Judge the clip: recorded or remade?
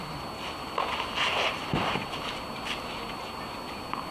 recorded